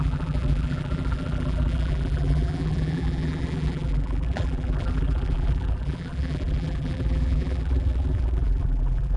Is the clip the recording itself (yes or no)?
no